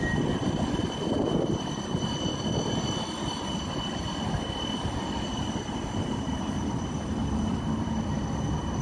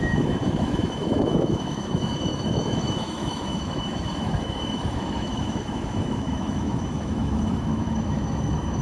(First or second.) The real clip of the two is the first